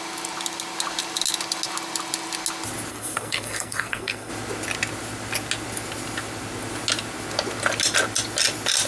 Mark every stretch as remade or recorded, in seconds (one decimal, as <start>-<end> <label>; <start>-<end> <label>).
0.0-2.9 recorded; 2.9-4.3 remade; 4.3-8.9 recorded